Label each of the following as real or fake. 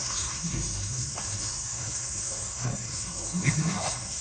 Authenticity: fake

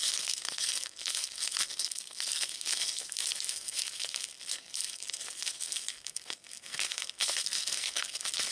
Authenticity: fake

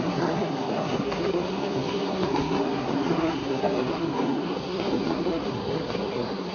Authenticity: fake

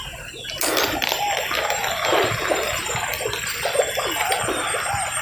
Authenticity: real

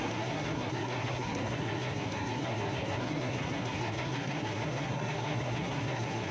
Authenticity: fake